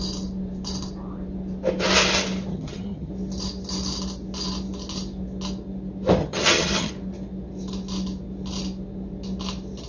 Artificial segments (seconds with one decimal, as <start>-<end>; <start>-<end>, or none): 2.5-3.1; 6.2-6.9